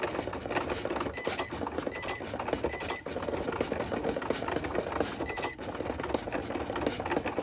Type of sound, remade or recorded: recorded